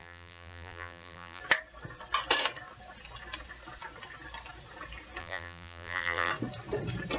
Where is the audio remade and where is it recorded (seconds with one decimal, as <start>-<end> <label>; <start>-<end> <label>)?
0.0-1.4 remade; 1.4-5.2 recorded; 5.2-6.3 remade; 6.3-7.2 recorded